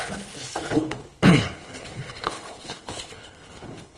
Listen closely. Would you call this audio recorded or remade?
remade